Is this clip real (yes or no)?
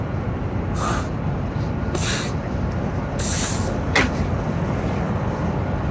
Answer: yes